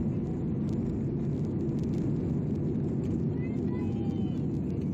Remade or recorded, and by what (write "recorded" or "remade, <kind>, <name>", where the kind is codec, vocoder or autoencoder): recorded